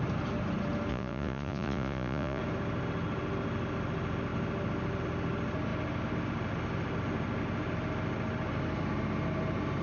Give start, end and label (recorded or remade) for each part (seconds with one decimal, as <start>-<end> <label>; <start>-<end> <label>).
0.0-0.9 recorded; 0.9-2.4 remade; 2.4-9.8 recorded